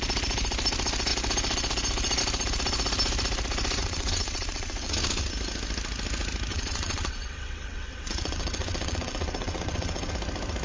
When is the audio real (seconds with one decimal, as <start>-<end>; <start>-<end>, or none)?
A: 0.0-3.8; 5.0-6.5; 10.1-10.6